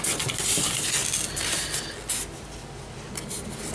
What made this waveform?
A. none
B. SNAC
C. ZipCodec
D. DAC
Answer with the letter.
A